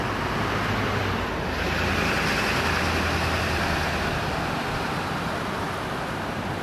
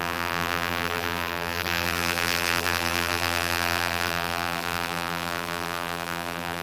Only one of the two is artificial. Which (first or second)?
second